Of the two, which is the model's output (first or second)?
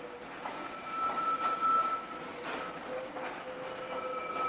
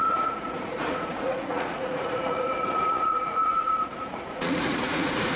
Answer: second